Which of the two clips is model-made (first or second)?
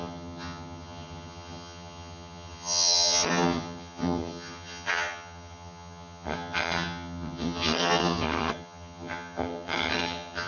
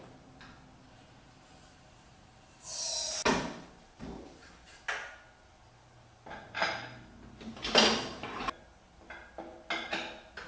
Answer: first